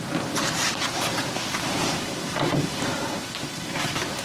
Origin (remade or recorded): remade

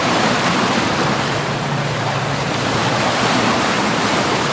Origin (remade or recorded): remade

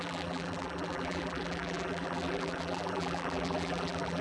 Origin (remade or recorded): remade